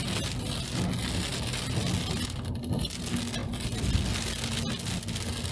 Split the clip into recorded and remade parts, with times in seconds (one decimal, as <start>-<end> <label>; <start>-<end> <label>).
0.0-5.5 recorded